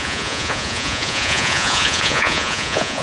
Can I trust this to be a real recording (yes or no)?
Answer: no